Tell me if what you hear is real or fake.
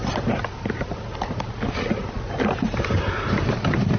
real